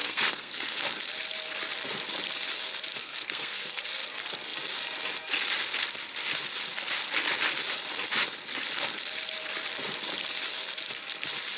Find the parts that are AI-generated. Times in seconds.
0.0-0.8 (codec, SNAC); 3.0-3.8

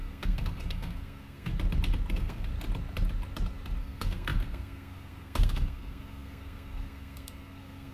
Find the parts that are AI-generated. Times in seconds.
0.0-1.5 (codec, SNAC); 2.1-2.5; 3.8-7.9

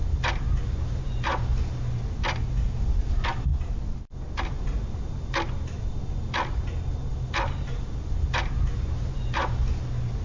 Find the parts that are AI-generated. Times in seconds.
none

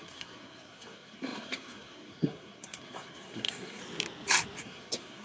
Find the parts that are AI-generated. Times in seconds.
0.0-3.8 (codec, SNAC); 4.6-5.2